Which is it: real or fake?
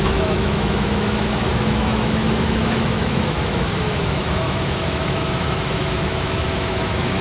fake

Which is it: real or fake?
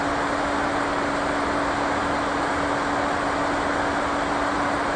real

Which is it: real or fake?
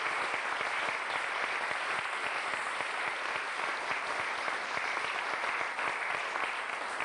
real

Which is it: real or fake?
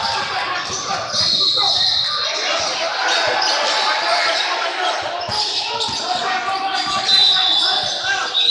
real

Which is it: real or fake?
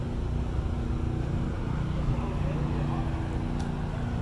real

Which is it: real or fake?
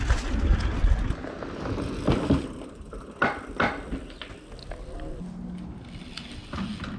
real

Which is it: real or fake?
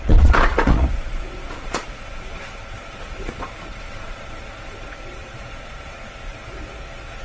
fake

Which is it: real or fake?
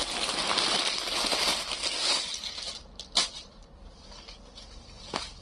real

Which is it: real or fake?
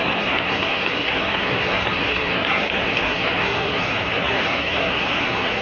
fake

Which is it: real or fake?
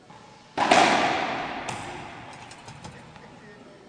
real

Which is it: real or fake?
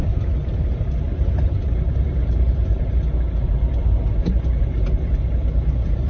fake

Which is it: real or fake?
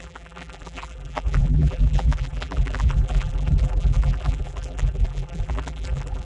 fake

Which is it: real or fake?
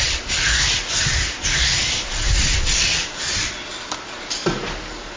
real